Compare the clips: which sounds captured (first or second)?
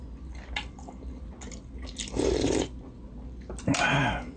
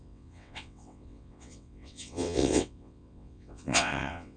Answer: first